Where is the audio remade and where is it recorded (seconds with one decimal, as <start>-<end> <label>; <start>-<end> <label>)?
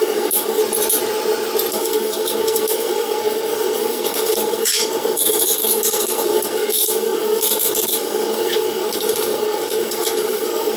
0.0-0.6 remade; 0.6-1.7 recorded; 1.7-10.8 remade